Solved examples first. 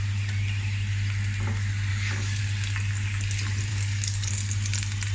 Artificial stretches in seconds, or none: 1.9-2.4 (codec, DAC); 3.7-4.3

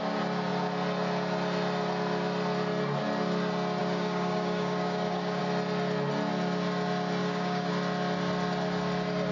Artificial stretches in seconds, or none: 3.8-5.4 (codec, DAC); 7.2-7.7

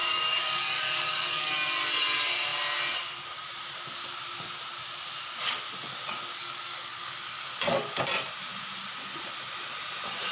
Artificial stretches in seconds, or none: 0.0-1.5 (codec, DAC); 6.4-8.0

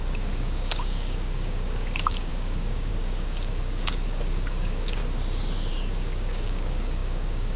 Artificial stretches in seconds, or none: 0.0-5.0 (codec, DAC); 5.7-7.6

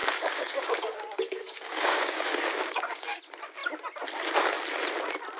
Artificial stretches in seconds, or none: 0.0-3.2 (codec, DAC)

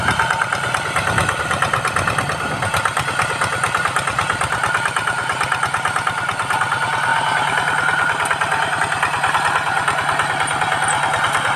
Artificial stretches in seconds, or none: none